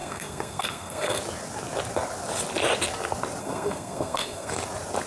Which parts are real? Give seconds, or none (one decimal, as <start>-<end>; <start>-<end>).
1.2-3.4; 4.5-5.1